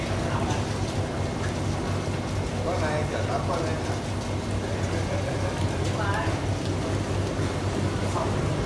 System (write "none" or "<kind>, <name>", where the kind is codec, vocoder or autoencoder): none